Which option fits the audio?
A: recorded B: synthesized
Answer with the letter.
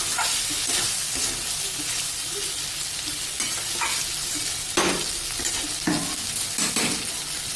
A